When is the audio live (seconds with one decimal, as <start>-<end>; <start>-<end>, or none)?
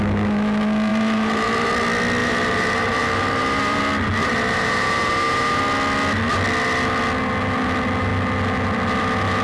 0.0-0.9; 1.7-2.2; 3.8-4.2; 5.6-9.4